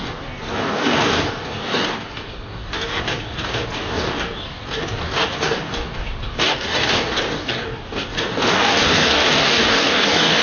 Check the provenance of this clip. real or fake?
fake